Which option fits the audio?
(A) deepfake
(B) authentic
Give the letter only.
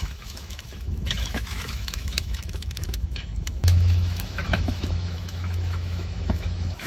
A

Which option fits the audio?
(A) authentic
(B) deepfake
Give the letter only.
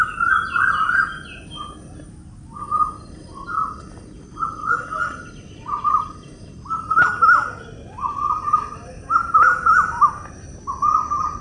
A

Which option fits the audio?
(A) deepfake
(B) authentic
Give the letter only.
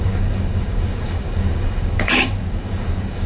A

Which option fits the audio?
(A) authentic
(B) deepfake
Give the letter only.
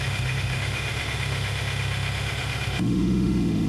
B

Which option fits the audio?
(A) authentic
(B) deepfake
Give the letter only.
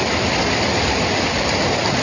B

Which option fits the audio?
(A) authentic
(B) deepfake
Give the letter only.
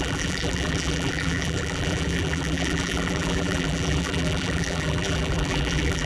B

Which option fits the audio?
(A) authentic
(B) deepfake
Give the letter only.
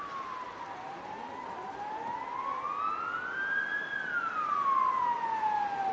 A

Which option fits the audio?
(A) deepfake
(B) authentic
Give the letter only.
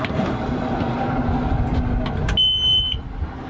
B